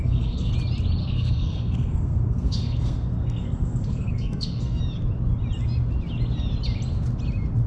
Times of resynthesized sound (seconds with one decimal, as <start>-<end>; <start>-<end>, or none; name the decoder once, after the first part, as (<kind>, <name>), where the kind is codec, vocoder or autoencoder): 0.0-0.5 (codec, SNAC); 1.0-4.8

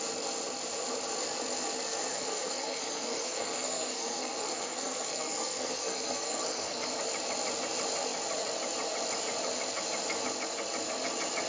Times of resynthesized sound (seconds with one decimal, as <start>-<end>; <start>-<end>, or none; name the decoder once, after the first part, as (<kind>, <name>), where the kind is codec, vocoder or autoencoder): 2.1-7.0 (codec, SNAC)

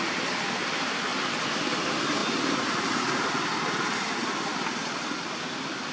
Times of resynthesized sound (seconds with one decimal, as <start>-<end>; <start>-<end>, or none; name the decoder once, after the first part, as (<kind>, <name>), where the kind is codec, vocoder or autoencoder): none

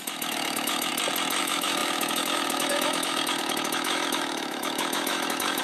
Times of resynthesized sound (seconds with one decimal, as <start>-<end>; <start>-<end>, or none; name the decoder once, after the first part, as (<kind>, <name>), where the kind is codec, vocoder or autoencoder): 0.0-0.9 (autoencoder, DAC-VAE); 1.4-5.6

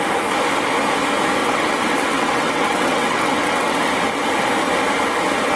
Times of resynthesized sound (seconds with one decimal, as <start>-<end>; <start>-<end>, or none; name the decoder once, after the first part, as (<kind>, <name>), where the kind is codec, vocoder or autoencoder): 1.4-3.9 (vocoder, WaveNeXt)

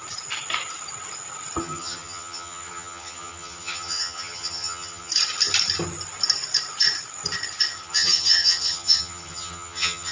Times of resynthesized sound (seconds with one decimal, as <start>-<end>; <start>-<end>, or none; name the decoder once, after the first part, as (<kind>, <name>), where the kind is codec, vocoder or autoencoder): 1.6-5.1 (vocoder, HiFi-GAN); 7.7-10.1